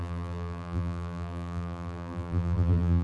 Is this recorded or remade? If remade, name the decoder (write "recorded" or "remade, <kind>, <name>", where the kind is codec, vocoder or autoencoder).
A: remade, vocoder, BigVGAN v2